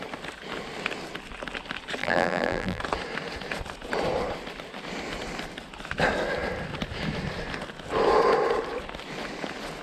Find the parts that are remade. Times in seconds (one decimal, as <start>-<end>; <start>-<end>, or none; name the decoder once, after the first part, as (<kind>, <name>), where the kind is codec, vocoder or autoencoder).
2.0-2.8 (vocoder, BigVGAN v2)